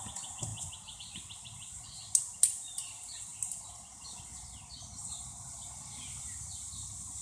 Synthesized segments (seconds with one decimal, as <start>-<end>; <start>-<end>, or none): none